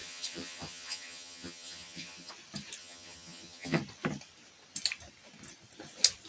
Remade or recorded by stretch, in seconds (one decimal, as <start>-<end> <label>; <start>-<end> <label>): 0.0-2.3 remade; 2.3-2.8 recorded; 2.8-3.8 remade; 3.8-6.3 recorded